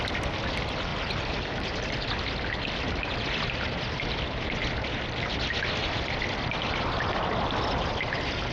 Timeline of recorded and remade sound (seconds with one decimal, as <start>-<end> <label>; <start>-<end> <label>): 0.0-0.9 recorded; 0.9-3.5 remade; 3.5-5.8 recorded; 5.8-6.6 remade; 6.6-8.5 recorded